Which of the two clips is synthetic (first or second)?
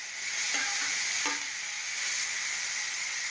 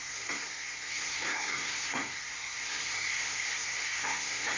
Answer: second